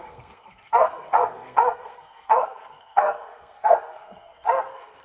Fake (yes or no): yes